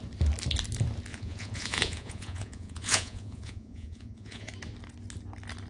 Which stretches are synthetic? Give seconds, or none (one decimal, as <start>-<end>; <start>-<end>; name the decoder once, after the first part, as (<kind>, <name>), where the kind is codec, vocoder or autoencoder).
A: 1.1-4.5 (vocoder, Vocos)